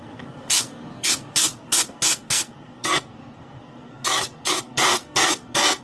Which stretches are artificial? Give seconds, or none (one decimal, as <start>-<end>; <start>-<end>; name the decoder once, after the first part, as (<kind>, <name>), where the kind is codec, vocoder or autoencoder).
0.0-5.8 (codec, SNAC)